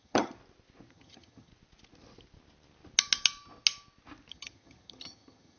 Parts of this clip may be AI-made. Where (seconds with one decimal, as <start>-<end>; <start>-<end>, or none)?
0.0-0.4; 0.9-1.5; 4.3-5.6